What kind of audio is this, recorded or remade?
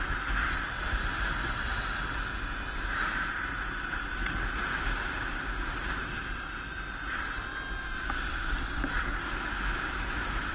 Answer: recorded